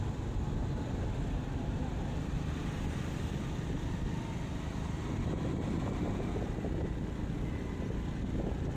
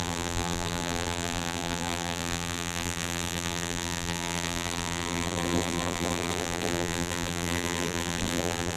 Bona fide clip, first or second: first